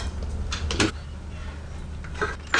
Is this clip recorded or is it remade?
recorded